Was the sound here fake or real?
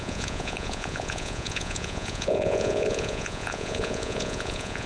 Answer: fake